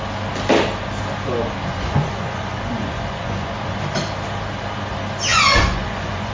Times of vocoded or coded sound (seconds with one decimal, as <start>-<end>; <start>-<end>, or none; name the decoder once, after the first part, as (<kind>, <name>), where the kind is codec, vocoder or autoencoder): 1.7-3.6 (vocoder, Vocos); 5.3-6.3